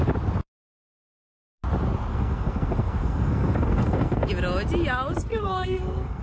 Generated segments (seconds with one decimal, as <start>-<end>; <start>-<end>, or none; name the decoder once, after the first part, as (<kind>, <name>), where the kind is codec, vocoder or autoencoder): 2.1-4.3 (codec, SNAC); 5.3-6.2